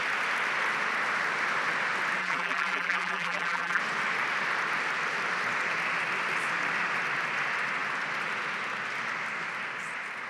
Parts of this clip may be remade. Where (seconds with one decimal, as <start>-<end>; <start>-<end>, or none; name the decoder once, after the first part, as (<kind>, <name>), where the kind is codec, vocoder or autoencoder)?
2.2-3.8 (vocoder, BigVGAN v2)